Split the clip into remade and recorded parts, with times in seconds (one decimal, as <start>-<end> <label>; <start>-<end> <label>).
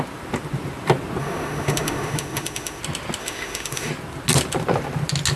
0.0-1.2 recorded; 1.2-2.8 remade; 2.8-3.2 recorded; 3.2-3.9 remade; 3.9-5.4 recorded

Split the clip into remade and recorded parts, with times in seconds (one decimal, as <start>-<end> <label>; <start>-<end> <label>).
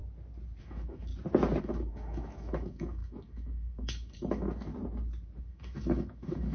0.0-0.6 recorded; 0.6-1.1 remade; 1.1-1.6 recorded; 1.6-4.7 remade; 4.7-5.4 recorded; 5.4-6.5 remade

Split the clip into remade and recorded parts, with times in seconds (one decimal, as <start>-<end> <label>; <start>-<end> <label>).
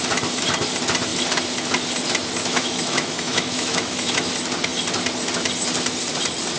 0.0-2.4 recorded; 2.4-4.3 remade; 4.3-6.6 recorded